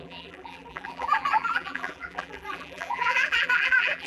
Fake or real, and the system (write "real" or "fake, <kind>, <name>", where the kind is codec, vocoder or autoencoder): fake, vocoder, BigVGAN v2